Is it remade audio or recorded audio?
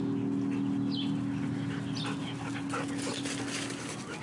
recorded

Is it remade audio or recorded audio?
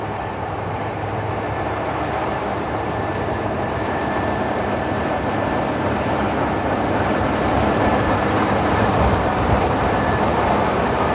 remade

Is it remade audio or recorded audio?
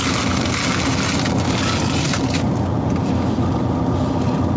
recorded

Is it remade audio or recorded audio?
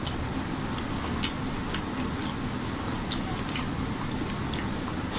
recorded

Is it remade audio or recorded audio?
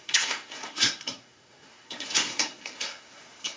remade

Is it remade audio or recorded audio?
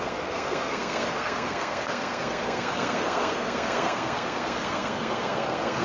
remade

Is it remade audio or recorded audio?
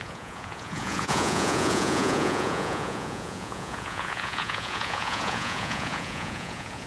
remade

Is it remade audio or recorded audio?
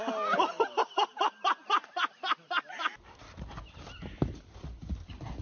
recorded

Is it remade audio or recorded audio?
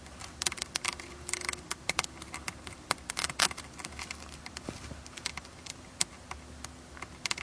recorded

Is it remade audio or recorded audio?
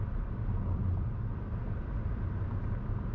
recorded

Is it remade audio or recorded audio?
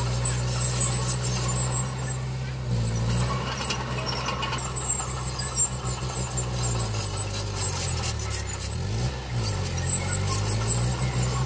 recorded